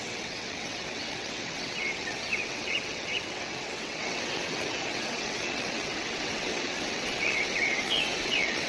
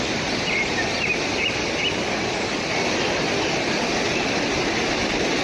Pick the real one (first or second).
second